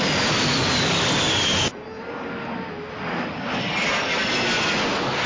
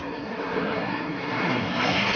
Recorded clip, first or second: first